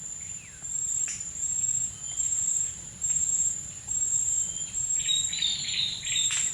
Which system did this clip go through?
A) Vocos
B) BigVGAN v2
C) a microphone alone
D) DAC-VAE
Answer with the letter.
B